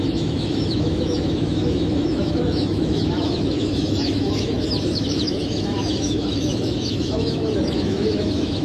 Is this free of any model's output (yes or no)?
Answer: no